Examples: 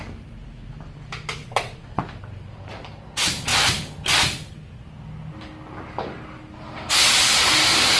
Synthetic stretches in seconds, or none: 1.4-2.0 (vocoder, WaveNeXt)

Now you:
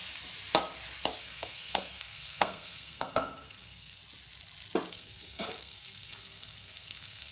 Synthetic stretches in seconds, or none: 1.2-4.0 (codec, SNAC); 4.9-7.3

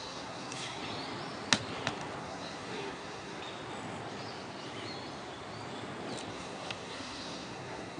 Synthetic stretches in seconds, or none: 0.0-0.8 (codec, SNAC); 2.2-3.4; 6.3-8.0

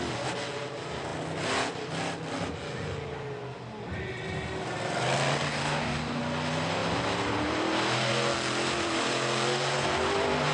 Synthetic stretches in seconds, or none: 5.5-6.2 (codec, DAC)

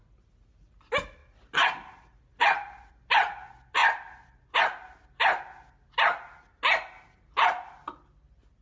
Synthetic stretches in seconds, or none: none